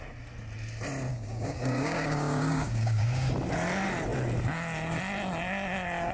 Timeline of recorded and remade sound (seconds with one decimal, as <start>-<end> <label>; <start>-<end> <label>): 0.0-1.1 recorded; 1.1-3.3 remade; 3.3-6.1 recorded